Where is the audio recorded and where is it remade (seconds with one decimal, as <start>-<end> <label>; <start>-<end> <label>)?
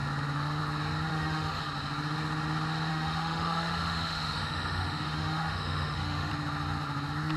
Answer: 0.0-1.1 recorded; 1.1-1.6 remade; 1.6-2.9 recorded; 2.9-6.3 remade; 6.3-7.4 recorded